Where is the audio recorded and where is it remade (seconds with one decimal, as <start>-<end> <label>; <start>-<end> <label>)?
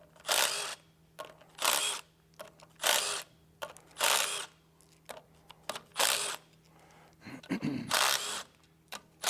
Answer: 0.0-9.3 recorded